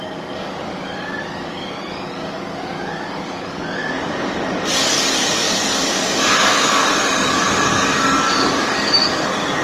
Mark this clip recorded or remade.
remade